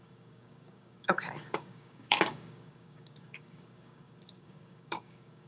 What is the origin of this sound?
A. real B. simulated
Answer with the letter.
B